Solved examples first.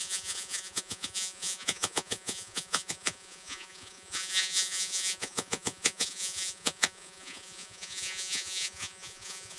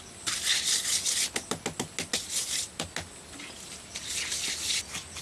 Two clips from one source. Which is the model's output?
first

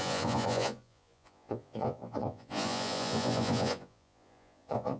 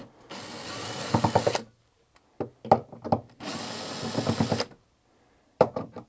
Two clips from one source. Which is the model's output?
first